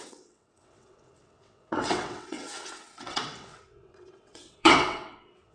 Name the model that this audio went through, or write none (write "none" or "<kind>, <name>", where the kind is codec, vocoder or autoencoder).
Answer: vocoder, WaveNeXt